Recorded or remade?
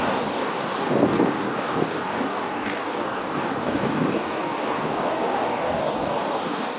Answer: remade